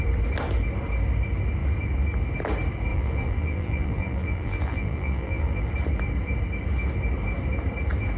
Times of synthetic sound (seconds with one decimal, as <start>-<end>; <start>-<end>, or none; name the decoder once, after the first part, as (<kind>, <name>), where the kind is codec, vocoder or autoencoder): 2.9-5.7 (vocoder, BigVGAN v2)